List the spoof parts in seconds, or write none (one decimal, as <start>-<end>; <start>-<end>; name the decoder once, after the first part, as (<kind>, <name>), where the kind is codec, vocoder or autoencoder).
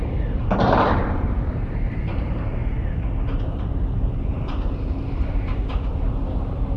0.0-2.6 (vocoder, BigVGAN v2); 3.7-5.6